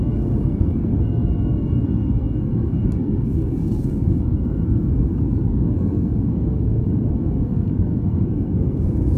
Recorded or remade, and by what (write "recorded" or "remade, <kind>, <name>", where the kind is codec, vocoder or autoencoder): remade, codec, SNAC